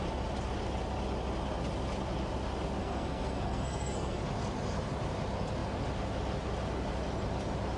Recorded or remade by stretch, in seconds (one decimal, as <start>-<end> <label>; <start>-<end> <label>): 0.0-2.8 recorded; 2.8-4.2 remade; 4.2-7.8 recorded